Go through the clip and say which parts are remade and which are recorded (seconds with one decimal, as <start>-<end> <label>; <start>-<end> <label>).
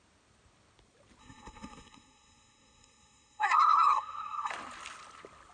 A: 0.0-1.2 recorded; 1.2-4.5 remade; 4.5-5.5 recorded